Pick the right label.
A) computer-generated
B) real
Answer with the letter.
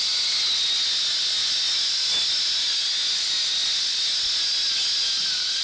B